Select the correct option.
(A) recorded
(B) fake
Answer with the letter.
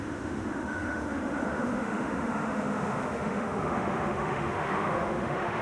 B